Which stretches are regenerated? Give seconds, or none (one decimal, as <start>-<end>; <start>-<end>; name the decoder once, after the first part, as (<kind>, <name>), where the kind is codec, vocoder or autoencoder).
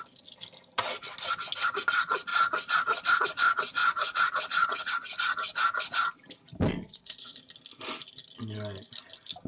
3.8-4.9 (vocoder, Vocos); 6.8-7.4